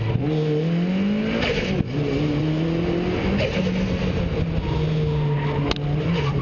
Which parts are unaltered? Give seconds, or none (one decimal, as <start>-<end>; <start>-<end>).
0.0-6.4